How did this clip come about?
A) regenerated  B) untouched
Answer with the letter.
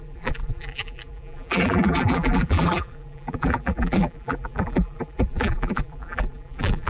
A